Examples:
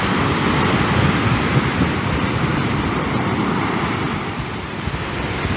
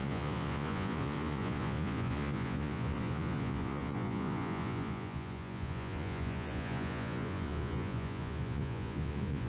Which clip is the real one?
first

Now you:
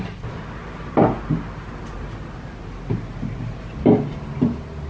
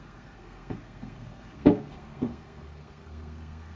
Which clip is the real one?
first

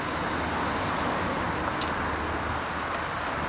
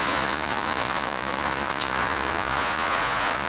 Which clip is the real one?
first